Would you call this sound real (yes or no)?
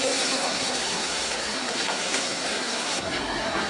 no